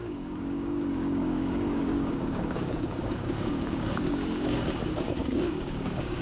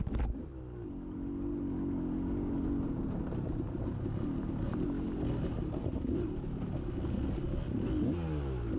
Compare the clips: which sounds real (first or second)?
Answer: second